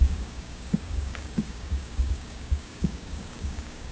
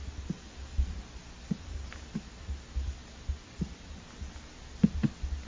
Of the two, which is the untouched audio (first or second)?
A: second